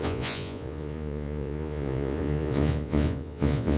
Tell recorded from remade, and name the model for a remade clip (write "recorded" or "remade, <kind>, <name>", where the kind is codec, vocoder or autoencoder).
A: remade, vocoder, Vocos